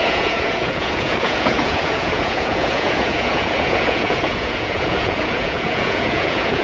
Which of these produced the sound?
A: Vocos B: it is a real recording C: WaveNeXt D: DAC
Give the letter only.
A